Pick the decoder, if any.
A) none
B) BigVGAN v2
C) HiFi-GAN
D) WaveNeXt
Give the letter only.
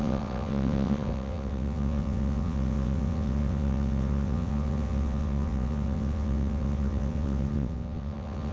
D